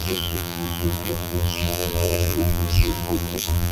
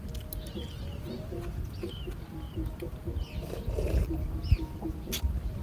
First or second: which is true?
second